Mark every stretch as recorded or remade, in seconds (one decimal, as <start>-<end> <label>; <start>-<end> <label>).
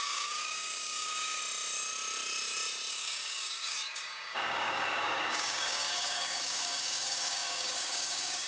0.0-1.4 remade; 1.4-2.9 recorded; 2.9-8.5 remade